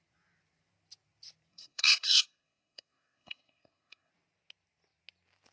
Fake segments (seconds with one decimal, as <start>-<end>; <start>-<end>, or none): 1.5-4.1